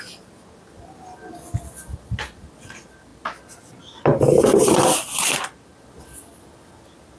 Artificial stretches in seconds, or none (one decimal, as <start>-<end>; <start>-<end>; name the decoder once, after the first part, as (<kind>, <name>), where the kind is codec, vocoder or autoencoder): none